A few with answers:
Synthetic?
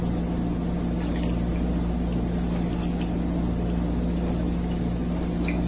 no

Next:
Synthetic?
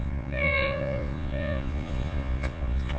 yes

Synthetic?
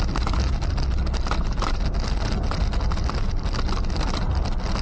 no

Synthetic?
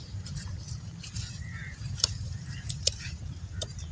yes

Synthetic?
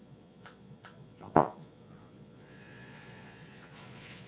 yes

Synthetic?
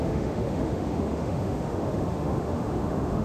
yes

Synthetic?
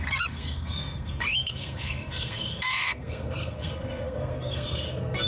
yes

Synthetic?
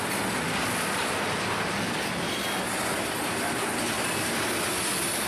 no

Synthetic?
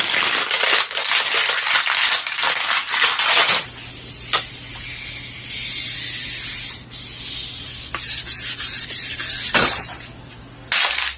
no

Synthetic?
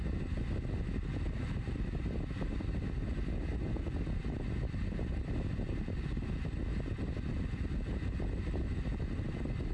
no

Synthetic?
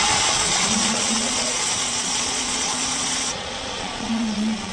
yes